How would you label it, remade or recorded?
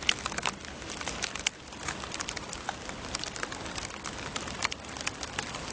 recorded